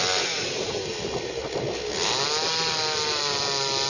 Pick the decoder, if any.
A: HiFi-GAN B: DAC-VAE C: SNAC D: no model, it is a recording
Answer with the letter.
D